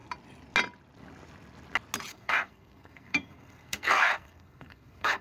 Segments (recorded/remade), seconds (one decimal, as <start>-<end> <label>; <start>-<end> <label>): 0.0-2.1 recorded; 2.1-5.2 remade